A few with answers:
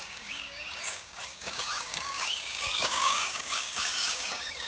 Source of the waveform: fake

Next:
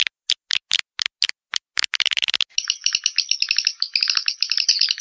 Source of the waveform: real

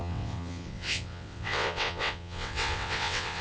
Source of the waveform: fake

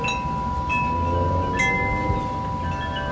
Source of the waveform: real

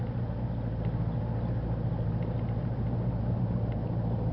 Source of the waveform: real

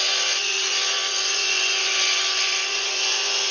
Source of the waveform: fake